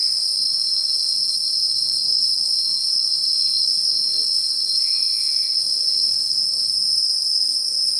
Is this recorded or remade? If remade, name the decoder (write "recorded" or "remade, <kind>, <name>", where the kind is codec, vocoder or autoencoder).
remade, codec, SNAC